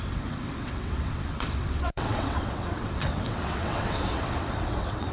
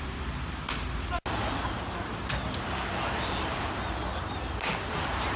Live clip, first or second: second